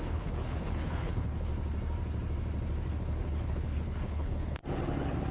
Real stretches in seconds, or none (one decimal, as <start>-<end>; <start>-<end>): 1.5-2.9; 4.6-5.3